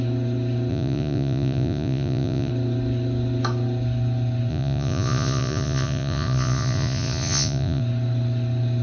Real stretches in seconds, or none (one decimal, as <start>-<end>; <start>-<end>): 0.0-0.7; 2.5-4.5; 7.8-8.8

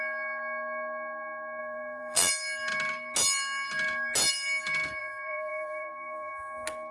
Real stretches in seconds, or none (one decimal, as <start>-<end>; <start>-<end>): 0.0-1.6; 2.3-5.0; 6.3-6.9

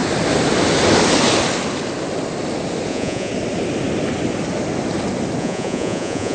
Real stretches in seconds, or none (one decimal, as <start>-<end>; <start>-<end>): 0.0-2.9; 3.3-5.4

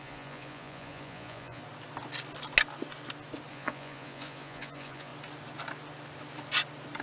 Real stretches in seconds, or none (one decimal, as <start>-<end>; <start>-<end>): 1.6-3.5; 5.1-7.0

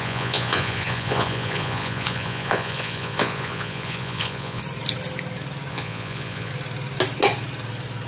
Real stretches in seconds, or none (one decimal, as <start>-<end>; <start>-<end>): 4.6-5.7; 6.5-8.1